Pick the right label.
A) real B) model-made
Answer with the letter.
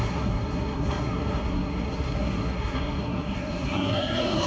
B